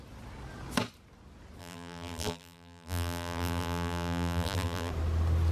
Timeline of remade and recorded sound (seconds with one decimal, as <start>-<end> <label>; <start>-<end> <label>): 0.0-1.6 recorded; 1.6-4.9 remade; 4.9-5.5 recorded